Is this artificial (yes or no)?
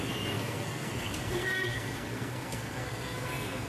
yes